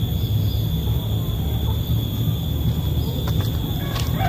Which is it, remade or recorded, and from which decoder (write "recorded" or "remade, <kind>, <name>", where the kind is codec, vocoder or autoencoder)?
recorded